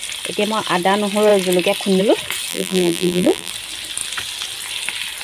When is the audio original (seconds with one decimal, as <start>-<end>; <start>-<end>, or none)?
0.0-2.5; 3.5-5.2